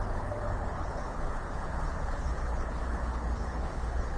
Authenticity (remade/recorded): remade